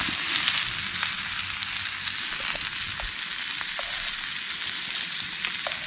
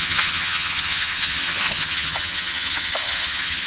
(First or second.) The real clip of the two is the first